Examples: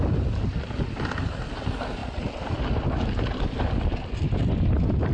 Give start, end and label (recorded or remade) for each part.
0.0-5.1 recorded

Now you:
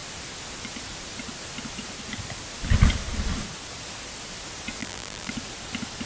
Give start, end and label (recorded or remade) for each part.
0.0-4.8 recorded; 4.8-5.3 remade; 5.3-6.1 recorded

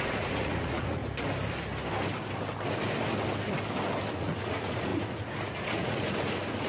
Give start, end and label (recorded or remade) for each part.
0.0-1.0 remade; 1.0-4.1 recorded; 4.1-6.7 remade

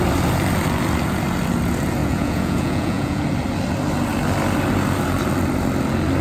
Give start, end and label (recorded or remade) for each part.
0.0-2.0 recorded; 2.0-3.2 remade; 3.2-6.2 recorded

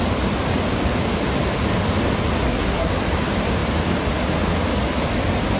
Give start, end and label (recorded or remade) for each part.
0.0-2.4 recorded; 2.4-2.9 remade; 2.9-5.6 recorded

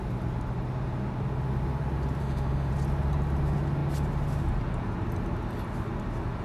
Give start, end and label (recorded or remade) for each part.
0.0-2.2 recorded; 2.2-2.7 remade; 2.7-6.4 recorded

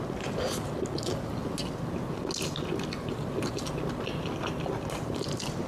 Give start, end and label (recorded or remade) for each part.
0.0-5.7 recorded